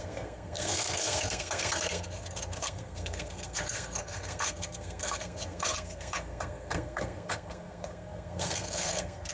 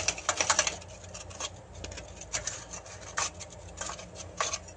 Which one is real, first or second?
second